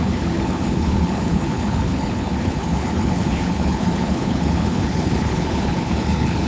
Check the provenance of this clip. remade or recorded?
remade